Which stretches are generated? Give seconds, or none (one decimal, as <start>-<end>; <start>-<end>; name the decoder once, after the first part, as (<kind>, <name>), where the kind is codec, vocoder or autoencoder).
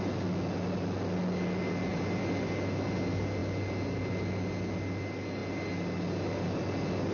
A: 1.9-2.5 (vocoder, BigVGAN v2)